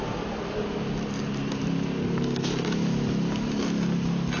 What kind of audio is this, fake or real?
real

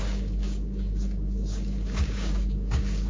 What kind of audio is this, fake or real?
fake